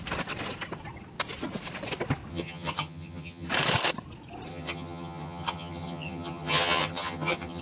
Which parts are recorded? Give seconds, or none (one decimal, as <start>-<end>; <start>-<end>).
0.0-2.3; 3.5-4.5